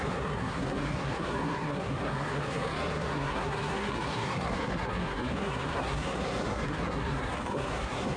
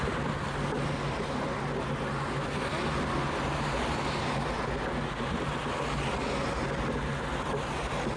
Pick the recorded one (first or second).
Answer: second